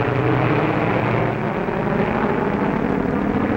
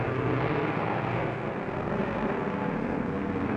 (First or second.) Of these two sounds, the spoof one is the second